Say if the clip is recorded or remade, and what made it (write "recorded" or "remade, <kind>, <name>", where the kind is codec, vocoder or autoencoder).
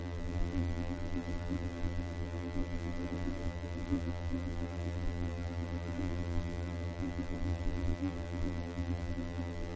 remade, vocoder, BigVGAN v2